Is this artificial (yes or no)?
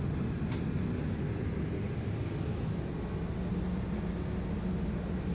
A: no